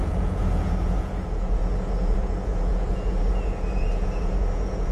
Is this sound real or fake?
fake